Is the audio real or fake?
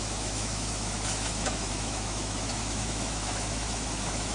fake